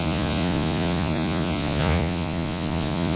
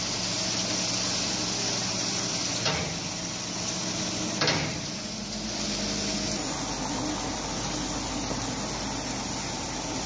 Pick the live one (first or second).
second